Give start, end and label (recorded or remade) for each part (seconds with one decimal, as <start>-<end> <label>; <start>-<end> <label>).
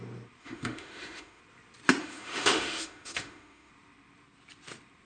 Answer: 0.0-0.4 recorded; 0.4-1.4 remade; 1.4-2.0 recorded; 2.0-3.7 remade; 3.7-5.1 recorded